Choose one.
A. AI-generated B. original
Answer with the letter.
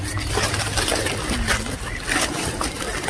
B